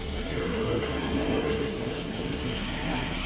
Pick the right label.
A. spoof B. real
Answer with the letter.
A